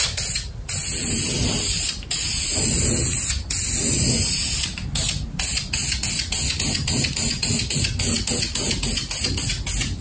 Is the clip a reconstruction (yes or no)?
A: no